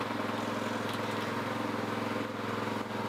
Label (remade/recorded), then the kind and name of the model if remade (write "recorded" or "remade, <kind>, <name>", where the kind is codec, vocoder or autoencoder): recorded